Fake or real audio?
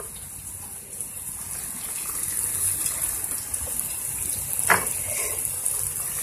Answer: real